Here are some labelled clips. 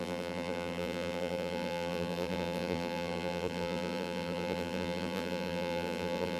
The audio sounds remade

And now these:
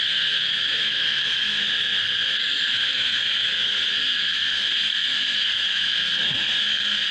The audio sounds remade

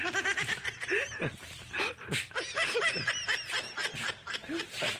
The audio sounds recorded